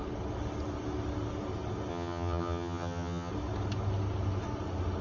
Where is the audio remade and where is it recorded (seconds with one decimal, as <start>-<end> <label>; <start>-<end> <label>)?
0.0-1.9 recorded; 1.9-3.3 remade; 3.3-5.0 recorded